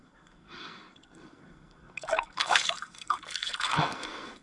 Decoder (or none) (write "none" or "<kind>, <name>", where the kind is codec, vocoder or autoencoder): codec, SNAC